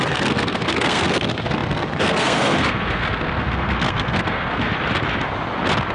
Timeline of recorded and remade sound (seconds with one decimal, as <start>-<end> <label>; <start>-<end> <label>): 0.0-4.7 remade; 4.7-5.9 recorded